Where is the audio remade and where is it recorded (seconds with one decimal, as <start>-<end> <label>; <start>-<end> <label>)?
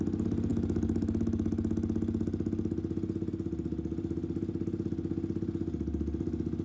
0.0-6.6 recorded